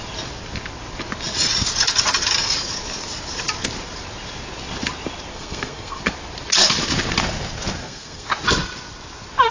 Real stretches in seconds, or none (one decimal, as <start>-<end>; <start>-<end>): 0.0-5.3; 6.0-7.8; 8.3-9.5